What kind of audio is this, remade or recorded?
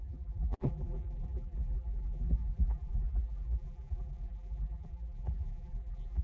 remade